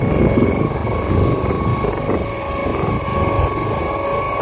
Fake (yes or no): no